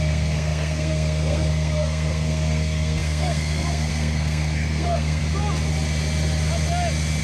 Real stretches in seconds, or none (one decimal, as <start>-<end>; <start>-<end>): 5.2-7.2